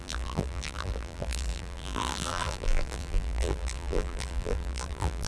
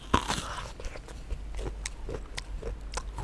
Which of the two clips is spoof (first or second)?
first